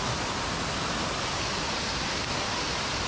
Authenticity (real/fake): real